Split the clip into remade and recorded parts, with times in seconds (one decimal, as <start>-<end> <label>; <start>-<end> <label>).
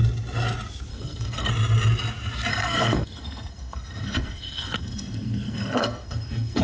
0.0-0.9 recorded; 0.9-1.5 remade; 1.5-2.5 recorded; 2.5-6.6 remade